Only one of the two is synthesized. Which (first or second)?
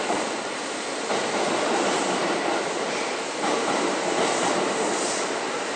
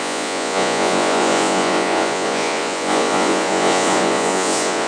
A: second